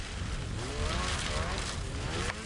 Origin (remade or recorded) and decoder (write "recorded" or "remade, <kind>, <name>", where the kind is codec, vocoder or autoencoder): recorded